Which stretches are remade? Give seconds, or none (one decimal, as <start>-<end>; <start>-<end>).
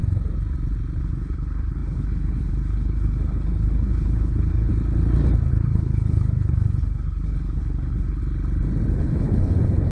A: 1.0-4.7; 5.5-8.2; 8.9-9.9